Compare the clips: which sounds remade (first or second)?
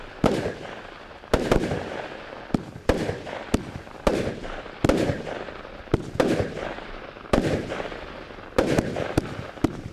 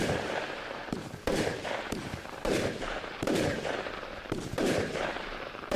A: second